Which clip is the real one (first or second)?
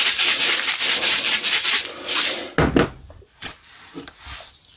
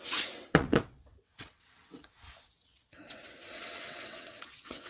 first